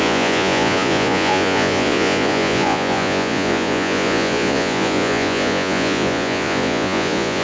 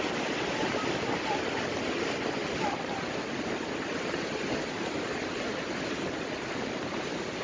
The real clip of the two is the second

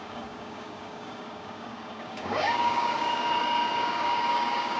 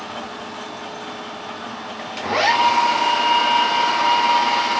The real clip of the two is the second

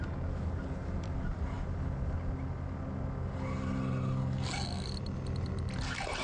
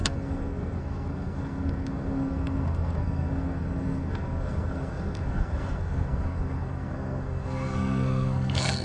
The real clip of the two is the first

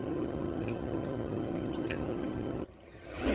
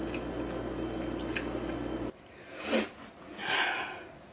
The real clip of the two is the second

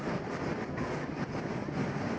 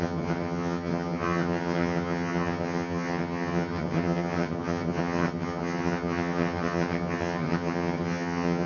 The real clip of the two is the first